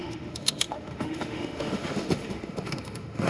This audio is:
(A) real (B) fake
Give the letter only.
B